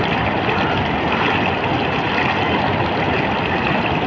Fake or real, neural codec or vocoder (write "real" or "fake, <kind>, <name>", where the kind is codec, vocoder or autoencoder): real